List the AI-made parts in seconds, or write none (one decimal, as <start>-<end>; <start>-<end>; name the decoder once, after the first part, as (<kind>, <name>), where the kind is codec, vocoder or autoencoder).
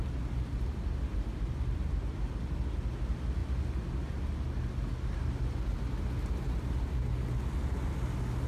1.1-2.5 (vocoder, BigVGAN v2)